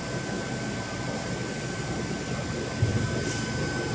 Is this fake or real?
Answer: real